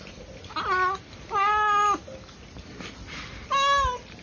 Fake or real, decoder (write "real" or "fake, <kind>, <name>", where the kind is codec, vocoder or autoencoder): real